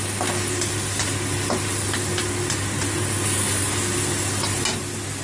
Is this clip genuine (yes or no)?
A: yes